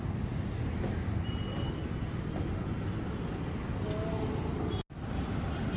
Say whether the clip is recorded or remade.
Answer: recorded